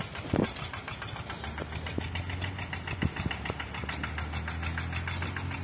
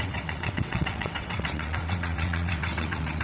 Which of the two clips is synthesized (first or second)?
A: second